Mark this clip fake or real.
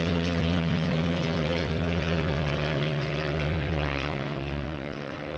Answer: fake